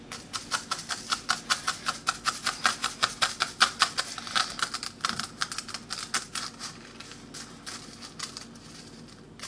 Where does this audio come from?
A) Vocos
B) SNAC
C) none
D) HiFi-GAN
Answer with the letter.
C